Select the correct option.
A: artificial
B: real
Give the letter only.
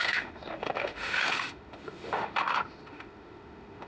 A